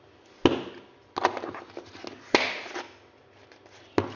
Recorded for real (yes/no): yes